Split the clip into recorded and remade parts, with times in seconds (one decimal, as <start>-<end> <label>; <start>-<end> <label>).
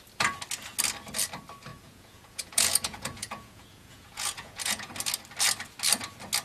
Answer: 0.0-1.7 recorded; 1.7-4.9 remade; 4.9-6.4 recorded